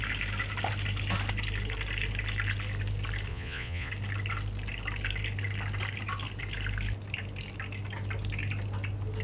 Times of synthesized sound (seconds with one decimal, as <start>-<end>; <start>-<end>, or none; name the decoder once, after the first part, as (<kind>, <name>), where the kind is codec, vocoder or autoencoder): 3.3-3.9 (vocoder, Vocos)